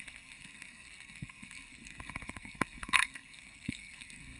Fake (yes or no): yes